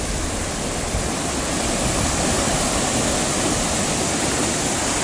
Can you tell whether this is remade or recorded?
recorded